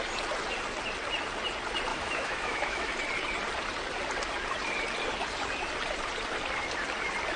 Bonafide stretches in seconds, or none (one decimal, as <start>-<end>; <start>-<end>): 0.0-1.9; 2.9-7.4

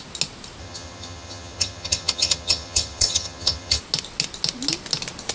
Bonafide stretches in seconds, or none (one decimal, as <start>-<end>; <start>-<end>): 0.0-0.6; 3.8-5.3

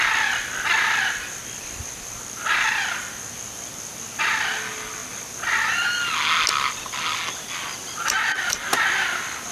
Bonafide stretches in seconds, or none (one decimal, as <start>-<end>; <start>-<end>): 0.0-9.5

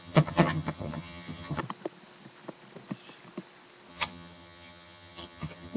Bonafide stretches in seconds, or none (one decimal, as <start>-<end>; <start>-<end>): 1.6-3.9

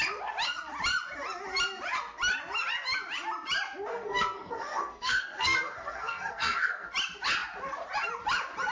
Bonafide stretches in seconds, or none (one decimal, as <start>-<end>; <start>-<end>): 0.0-3.9; 6.9-8.7

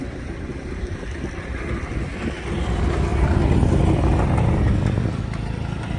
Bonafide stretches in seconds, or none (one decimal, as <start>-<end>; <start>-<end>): 0.0-6.0

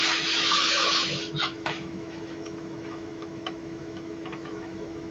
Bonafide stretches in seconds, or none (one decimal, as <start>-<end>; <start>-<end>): none